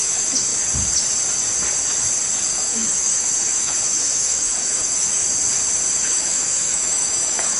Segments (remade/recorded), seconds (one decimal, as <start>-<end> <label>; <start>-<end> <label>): 0.0-0.5 remade; 0.5-2.5 recorded; 2.5-5.2 remade; 5.2-5.9 recorded; 5.9-7.6 remade